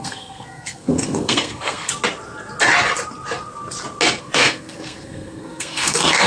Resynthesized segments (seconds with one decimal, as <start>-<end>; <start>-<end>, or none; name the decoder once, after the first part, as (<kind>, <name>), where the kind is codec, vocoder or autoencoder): 0.0-1.9 (codec, SNAC); 4.2-6.3